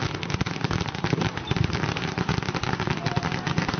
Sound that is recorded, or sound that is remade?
remade